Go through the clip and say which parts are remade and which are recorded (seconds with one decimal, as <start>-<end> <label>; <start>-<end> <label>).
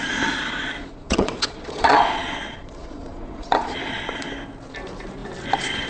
0.0-0.8 recorded; 0.8-4.3 remade; 4.3-5.9 recorded